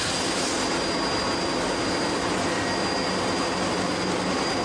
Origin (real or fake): real